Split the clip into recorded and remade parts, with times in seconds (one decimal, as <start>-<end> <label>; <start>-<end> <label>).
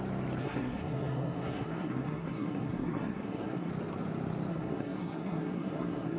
0.0-0.4 recorded; 0.4-3.7 remade; 3.7-4.5 recorded; 4.5-6.2 remade